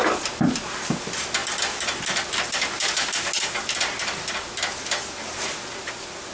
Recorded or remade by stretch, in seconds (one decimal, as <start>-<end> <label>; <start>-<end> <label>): 0.0-6.3 recorded